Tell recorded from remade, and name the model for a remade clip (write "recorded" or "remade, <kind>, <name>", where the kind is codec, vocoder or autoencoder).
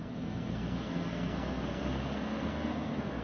remade, codec, SNAC